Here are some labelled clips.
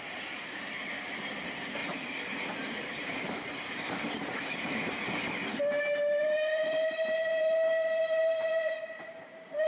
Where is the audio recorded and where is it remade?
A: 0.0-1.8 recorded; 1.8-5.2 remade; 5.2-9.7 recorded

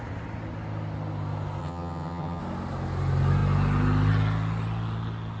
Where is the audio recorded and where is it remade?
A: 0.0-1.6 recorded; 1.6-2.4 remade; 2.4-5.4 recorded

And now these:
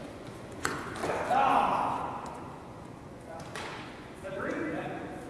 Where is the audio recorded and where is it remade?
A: 0.0-1.0 remade; 1.0-1.6 recorded; 1.6-5.3 remade

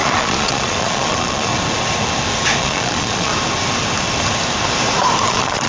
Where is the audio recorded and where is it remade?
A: 0.0-1.5 remade; 1.5-2.6 recorded; 2.6-3.3 remade; 3.3-5.3 recorded; 5.3-5.7 remade

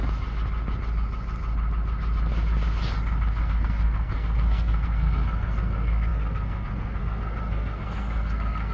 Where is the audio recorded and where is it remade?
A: 0.0-3.4 recorded; 3.4-8.7 remade

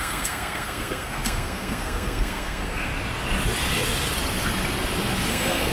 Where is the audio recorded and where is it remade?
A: 0.0-2.9 remade; 2.9-5.3 recorded; 5.3-5.7 remade